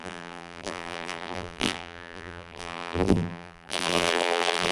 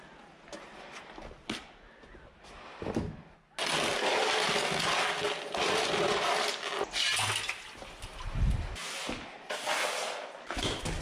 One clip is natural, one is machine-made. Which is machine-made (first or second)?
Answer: first